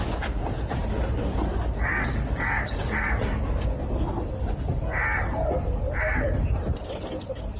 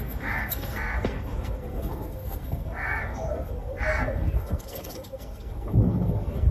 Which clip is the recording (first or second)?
first